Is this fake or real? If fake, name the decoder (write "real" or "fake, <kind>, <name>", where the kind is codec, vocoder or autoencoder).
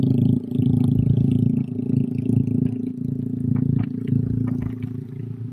real